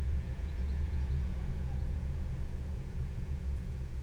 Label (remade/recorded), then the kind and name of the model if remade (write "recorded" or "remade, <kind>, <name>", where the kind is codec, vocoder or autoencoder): remade, vocoder, Vocos